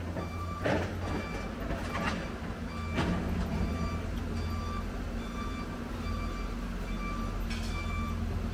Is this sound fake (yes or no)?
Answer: no